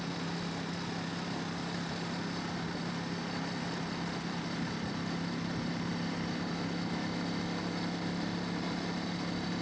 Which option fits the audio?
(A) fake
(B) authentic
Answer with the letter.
B